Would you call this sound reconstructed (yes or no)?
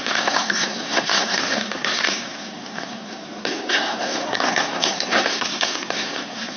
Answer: yes